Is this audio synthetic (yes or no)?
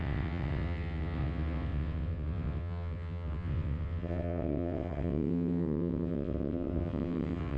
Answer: yes